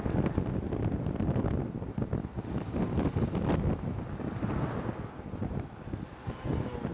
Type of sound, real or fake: real